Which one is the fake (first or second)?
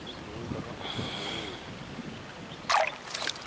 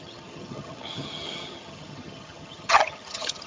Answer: second